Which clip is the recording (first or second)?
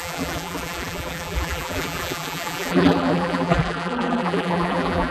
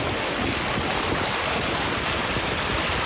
second